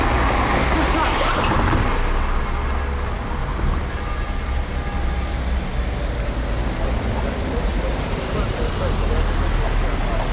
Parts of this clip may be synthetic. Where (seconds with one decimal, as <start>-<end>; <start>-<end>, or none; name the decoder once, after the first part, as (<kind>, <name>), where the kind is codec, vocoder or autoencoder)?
3.4-4.1 (vocoder, BigVGAN v2); 7.7-8.7